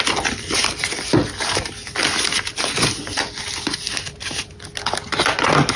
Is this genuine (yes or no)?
yes